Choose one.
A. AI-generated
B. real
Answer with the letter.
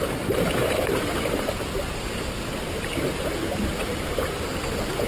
B